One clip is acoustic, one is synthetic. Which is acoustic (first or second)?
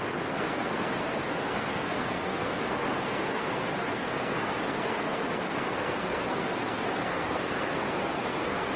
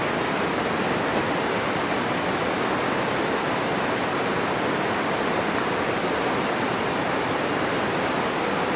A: second